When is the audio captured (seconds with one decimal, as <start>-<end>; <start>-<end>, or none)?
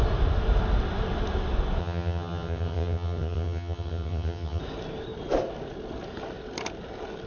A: 0.0-1.8; 4.6-7.3